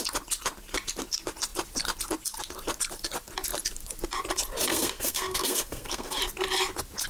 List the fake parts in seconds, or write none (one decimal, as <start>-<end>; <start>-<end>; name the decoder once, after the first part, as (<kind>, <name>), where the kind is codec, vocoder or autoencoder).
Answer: 4.7-6.2 (codec, SNAC)